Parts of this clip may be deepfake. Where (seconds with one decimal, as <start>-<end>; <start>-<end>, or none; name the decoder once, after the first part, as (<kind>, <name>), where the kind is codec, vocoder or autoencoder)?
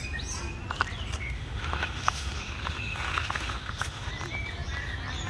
1.2-4.1 (autoencoder, DAC-VAE)